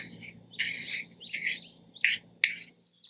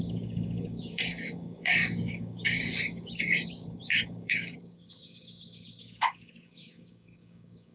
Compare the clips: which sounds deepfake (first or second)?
second